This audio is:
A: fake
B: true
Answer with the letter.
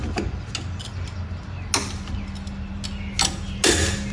B